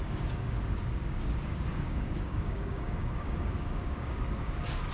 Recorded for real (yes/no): no